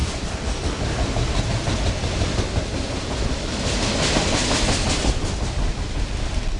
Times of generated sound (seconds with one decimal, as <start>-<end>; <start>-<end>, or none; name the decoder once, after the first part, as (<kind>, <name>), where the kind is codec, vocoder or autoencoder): 0.0-1.5 (vocoder, BigVGAN v2)